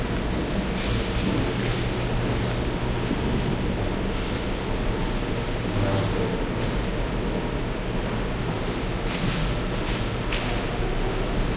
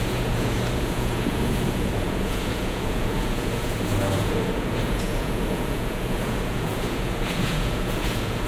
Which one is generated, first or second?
second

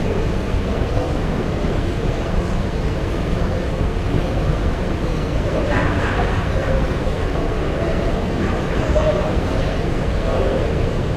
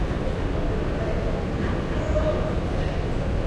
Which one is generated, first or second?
first